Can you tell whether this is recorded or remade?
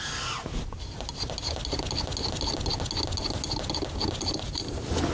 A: recorded